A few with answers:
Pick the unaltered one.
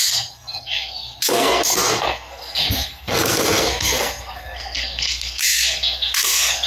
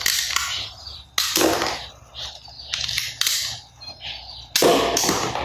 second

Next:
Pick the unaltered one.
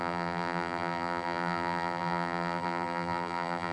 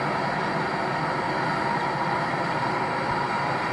second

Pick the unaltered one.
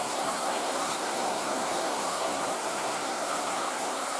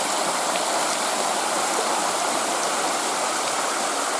second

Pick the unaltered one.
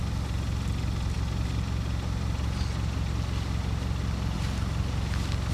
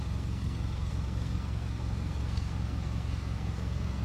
first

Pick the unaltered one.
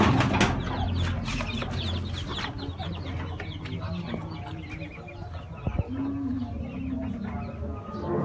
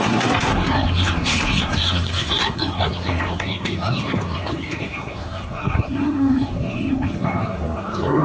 first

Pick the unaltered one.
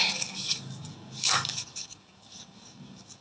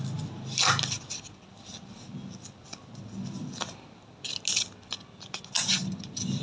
second